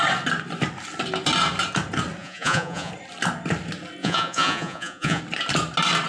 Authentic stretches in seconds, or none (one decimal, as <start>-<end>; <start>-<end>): 0.0-2.2; 2.9-4.0; 5.2-6.1